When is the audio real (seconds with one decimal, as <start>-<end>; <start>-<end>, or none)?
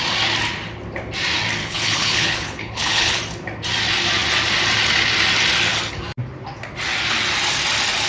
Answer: 0.0-1.6; 3.2-8.1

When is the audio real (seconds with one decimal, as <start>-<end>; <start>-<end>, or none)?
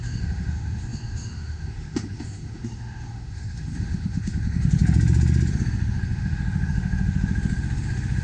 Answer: 4.8-5.5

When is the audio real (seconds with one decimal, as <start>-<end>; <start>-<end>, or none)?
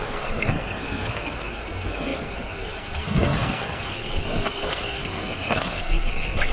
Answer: none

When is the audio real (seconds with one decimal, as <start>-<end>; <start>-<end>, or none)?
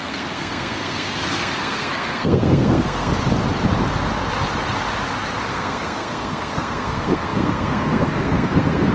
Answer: 3.1-5.5